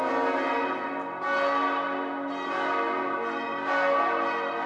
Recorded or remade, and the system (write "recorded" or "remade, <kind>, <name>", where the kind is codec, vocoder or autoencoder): recorded